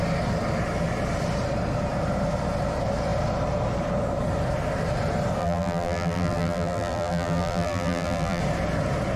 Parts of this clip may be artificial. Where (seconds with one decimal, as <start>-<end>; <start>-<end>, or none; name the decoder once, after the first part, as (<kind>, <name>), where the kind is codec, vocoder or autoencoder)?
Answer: 5.4-8.4 (vocoder, BigVGAN v2)